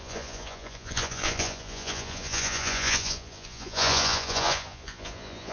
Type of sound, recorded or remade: remade